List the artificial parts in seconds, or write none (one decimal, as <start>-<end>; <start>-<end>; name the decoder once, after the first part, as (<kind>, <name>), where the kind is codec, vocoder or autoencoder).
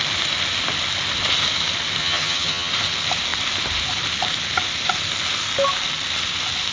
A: 2.0-2.7 (vocoder, HiFi-GAN)